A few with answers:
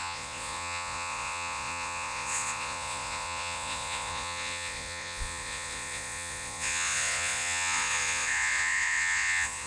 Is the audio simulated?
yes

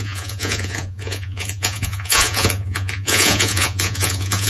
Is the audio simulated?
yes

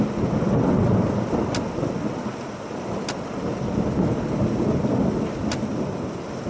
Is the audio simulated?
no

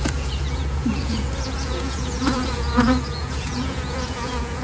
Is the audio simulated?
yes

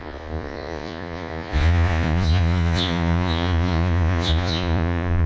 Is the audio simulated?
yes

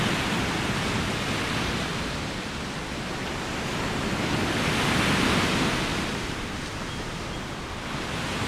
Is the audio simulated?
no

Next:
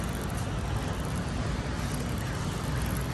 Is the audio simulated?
no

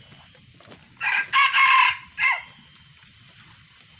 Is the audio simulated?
no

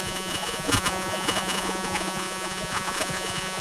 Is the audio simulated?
yes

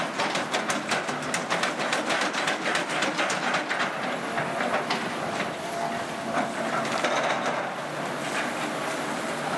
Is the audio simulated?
no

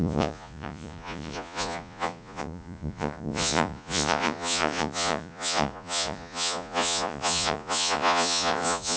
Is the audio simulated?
yes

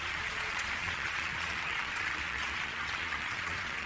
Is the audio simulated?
yes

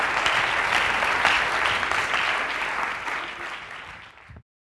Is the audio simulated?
no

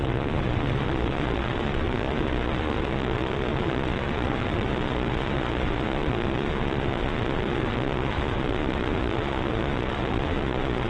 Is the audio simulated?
yes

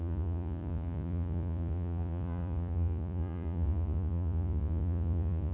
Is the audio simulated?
yes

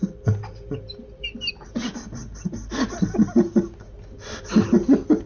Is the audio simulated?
no